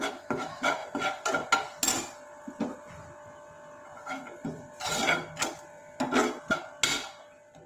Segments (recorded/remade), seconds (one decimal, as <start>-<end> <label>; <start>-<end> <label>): 0.0-7.7 recorded